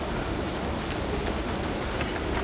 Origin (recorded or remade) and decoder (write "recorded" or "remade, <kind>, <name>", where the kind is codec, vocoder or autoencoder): recorded